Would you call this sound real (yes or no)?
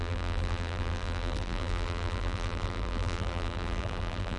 no